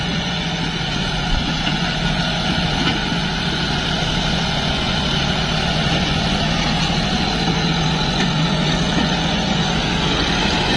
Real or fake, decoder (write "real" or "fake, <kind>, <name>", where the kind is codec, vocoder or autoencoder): fake, vocoder, Vocos